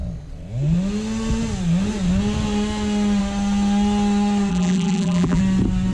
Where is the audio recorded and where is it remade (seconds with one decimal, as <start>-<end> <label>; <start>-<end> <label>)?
0.0-4.5 recorded; 4.5-5.4 remade; 5.4-5.9 recorded